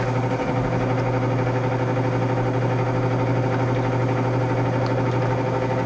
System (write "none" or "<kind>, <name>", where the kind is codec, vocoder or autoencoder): none